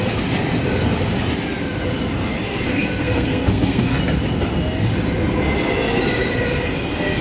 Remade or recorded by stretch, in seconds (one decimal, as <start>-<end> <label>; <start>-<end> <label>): 0.0-2.7 recorded; 2.7-4.0 remade; 4.0-7.2 recorded